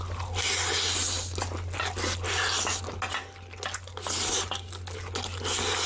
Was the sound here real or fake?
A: real